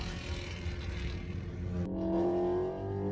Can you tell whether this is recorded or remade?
recorded